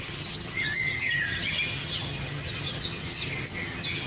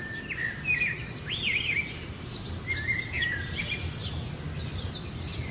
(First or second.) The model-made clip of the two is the first